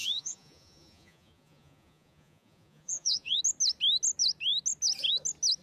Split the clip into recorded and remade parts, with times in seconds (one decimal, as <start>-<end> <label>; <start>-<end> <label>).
0.0-3.4 remade; 3.4-5.6 recorded